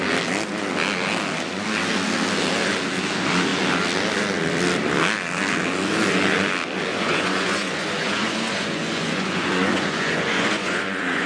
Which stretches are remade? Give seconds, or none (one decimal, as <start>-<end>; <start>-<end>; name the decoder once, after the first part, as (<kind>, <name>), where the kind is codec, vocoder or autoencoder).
6.9-11.3 (vocoder, Vocos)